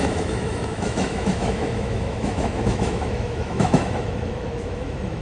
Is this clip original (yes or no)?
no